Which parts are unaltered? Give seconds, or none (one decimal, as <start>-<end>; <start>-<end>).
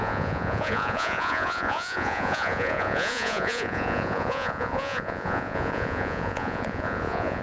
none